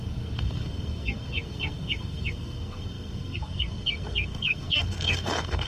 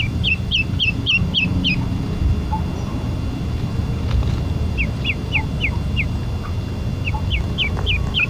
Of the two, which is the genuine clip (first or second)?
second